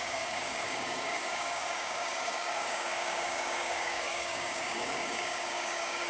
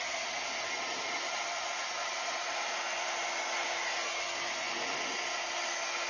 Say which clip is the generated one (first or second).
first